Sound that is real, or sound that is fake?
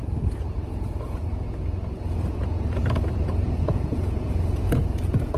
fake